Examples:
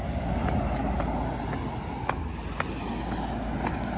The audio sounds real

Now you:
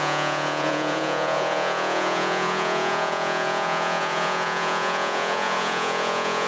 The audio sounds fake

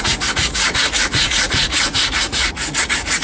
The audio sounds fake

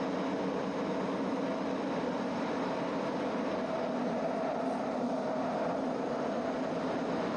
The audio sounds real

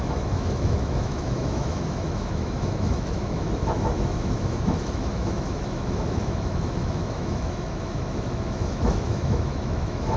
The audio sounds fake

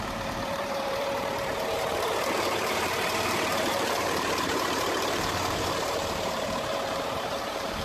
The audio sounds fake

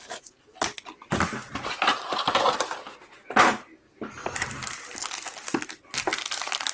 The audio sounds real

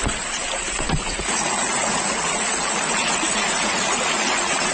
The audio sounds fake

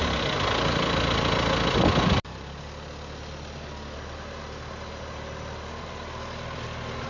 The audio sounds real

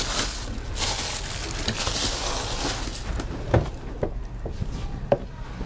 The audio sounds real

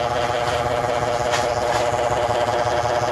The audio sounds real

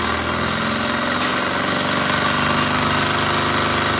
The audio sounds real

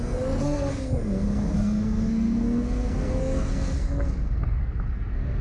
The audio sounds fake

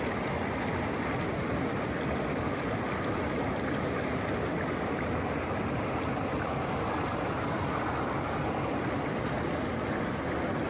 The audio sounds real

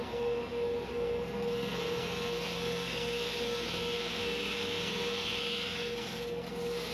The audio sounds fake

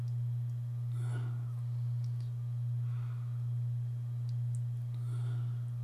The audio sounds real